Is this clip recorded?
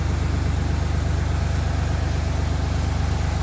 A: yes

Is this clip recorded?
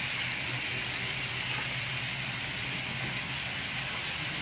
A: yes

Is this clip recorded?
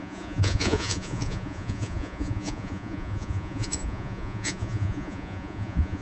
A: no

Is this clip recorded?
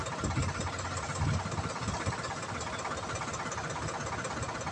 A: yes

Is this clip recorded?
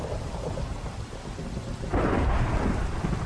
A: yes